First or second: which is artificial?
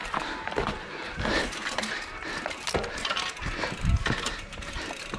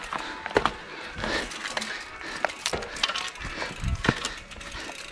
first